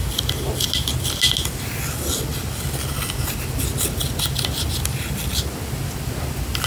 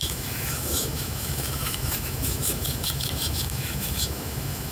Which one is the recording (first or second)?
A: first